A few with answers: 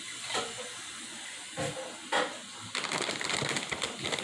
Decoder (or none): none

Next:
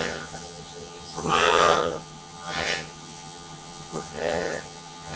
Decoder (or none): vocoder, HiFi-GAN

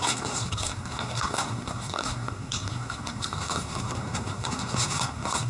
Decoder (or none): codec, SNAC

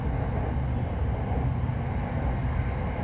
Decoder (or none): none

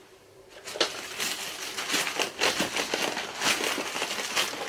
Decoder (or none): none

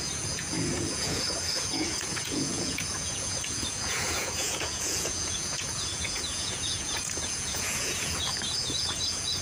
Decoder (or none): vocoder, Vocos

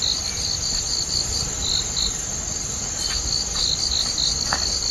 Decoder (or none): none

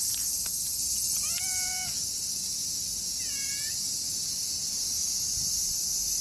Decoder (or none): none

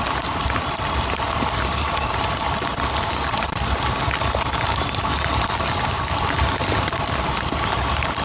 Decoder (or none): none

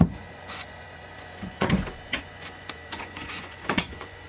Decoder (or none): vocoder, Vocos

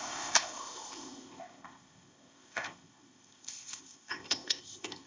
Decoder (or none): codec, ZipCodec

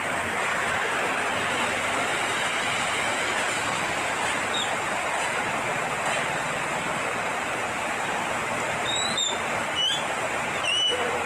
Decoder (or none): none